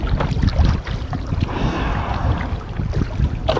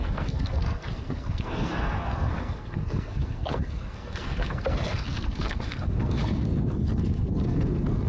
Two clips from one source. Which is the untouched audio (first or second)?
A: first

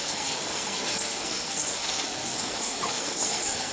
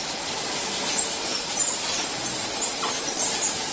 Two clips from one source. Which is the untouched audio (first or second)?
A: second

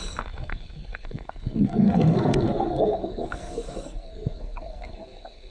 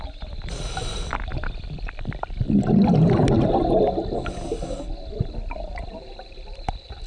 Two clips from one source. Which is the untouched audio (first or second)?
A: second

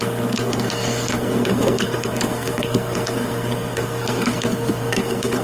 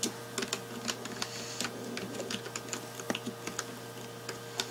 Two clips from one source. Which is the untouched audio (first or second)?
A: second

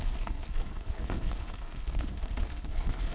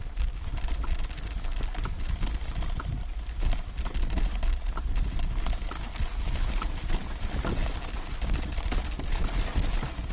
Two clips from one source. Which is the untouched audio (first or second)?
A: second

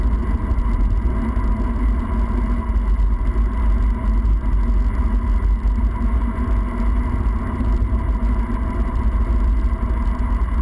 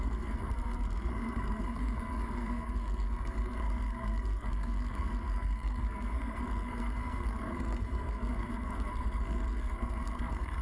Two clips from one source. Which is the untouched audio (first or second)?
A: first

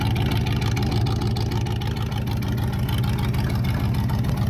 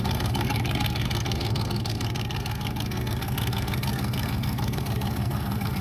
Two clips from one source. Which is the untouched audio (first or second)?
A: first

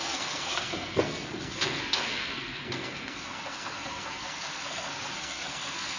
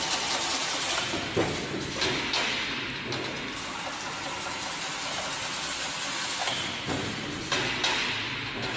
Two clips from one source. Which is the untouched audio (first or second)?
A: second